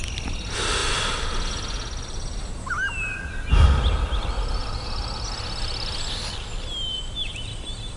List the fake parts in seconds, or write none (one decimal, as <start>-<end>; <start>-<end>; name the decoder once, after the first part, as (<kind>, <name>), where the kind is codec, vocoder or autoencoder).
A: none